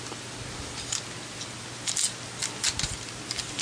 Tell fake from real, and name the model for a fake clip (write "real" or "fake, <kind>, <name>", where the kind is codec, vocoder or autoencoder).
real